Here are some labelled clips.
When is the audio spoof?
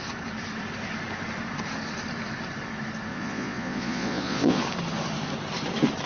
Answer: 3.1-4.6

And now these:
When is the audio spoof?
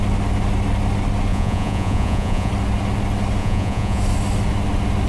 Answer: 1.3-2.5; 3.4-4.0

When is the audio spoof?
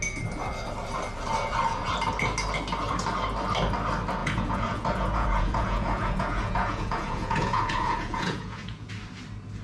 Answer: 4.2-8.9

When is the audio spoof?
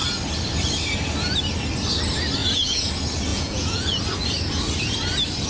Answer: 2.4-2.9; 3.3-4.0